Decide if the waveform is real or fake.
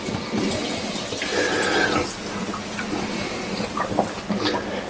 real